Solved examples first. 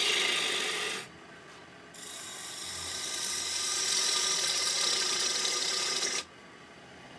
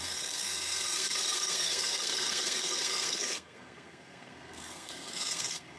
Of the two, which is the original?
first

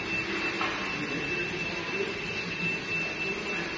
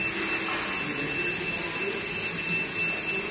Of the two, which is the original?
second